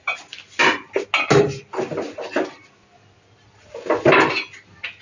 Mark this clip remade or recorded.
recorded